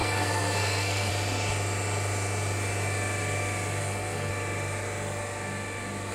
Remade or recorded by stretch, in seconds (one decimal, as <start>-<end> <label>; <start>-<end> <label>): 0.0-1.1 remade; 1.1-3.8 recorded; 3.8-4.3 remade; 4.3-6.1 recorded